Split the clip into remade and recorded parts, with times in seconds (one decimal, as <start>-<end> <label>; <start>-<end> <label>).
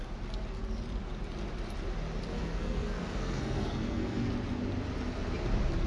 0.0-2.3 recorded; 2.3-4.3 remade; 4.3-5.9 recorded